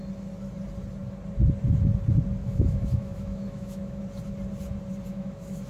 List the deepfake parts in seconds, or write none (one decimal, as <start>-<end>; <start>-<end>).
2.4-4.0; 5.1-5.7